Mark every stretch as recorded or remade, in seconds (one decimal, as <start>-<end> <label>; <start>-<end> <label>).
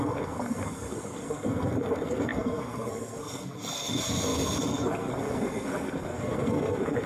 0.0-7.1 remade